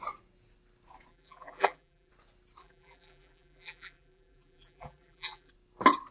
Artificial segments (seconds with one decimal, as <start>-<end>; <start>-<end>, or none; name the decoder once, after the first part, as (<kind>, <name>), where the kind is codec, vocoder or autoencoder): 1.1-2.1 (vocoder, BigVGAN v2); 2.6-5.5